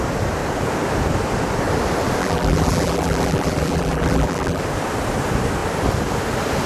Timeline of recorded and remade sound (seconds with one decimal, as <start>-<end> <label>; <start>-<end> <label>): 0.0-2.2 recorded; 2.2-4.6 remade; 4.6-6.7 recorded